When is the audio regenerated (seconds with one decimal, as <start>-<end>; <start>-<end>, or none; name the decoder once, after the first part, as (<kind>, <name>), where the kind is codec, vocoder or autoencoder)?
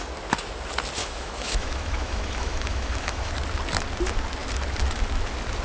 1.0-3.3 (autoencoder, DAC-VAE)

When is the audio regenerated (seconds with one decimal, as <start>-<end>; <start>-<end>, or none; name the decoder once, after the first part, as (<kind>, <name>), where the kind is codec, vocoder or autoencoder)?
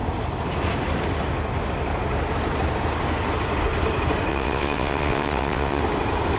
4.3-5.8 (vocoder, WaveNeXt)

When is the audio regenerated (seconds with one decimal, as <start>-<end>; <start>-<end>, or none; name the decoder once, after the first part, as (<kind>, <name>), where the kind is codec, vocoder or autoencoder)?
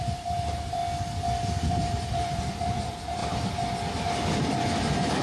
0.0-0.8 (vocoder, BigVGAN v2); 1.7-3.2; 4.8-5.2